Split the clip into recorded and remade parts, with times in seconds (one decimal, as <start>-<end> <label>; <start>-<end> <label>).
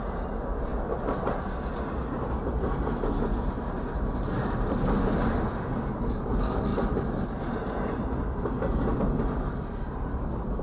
0.0-10.6 recorded